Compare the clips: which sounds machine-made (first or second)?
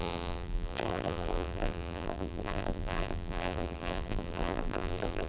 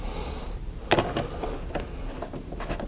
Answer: first